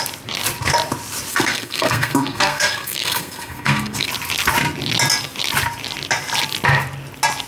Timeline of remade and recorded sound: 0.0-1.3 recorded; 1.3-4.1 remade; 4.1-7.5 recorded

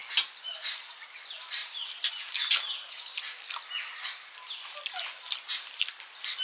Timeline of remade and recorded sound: 0.0-1.6 recorded; 1.6-2.1 remade; 2.1-6.4 recorded

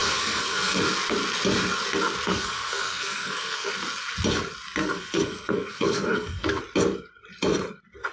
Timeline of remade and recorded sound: 0.0-0.8 remade; 0.8-2.3 recorded; 2.3-3.7 remade; 3.7-4.8 recorded; 4.8-6.6 remade; 6.6-8.1 recorded

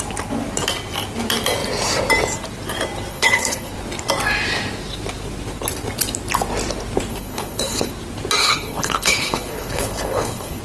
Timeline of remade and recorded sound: 0.0-3.1 recorded; 3.1-3.7 remade; 3.7-7.1 recorded; 7.1-7.9 remade; 7.9-8.4 recorded; 8.4-10.6 remade

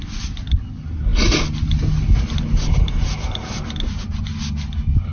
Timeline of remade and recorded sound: 0.0-5.1 recorded

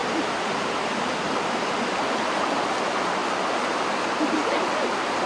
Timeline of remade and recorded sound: 0.0-5.3 recorded

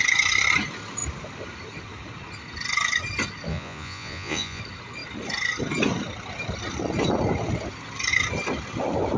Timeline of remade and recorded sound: 0.0-3.5 recorded; 3.5-4.6 remade; 4.6-9.2 recorded

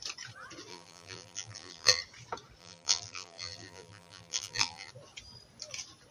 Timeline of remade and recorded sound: 0.0-0.7 recorded; 0.7-2.0 remade; 2.0-2.6 recorded; 2.6-4.9 remade; 4.9-6.1 recorded